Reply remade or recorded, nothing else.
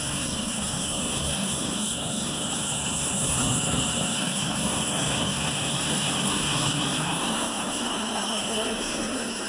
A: remade